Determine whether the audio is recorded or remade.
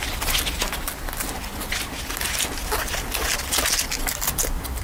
recorded